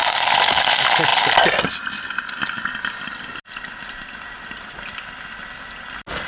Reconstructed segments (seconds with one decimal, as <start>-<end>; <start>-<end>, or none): none